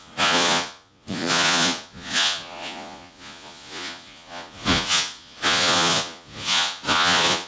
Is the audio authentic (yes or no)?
no